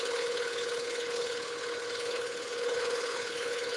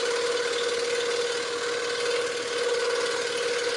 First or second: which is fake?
first